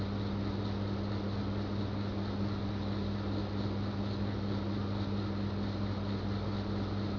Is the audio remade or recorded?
recorded